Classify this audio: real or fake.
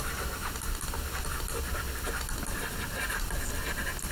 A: real